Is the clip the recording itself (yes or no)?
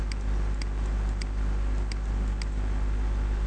yes